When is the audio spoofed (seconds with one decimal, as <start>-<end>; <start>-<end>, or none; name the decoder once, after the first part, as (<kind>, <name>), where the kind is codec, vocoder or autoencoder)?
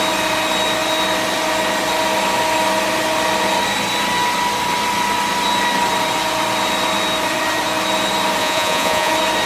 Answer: 8.4-9.1 (vocoder, Vocos)